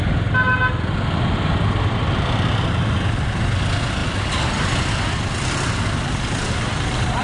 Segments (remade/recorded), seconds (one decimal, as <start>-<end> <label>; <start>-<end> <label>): 0.0-7.2 recorded